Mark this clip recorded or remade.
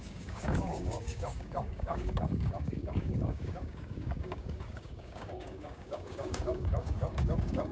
remade